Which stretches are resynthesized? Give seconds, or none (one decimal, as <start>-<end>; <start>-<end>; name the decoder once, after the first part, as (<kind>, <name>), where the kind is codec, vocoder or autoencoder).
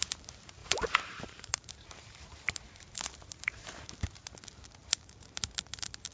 0.6-4.3 (vocoder, BigVGAN v2); 4.8-5.6